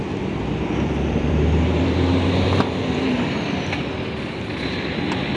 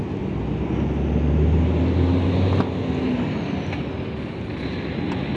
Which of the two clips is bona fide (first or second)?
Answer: second